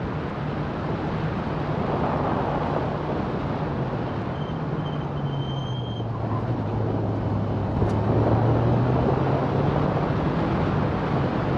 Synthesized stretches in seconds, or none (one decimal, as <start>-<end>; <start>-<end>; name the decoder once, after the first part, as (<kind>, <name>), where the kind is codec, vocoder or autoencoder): none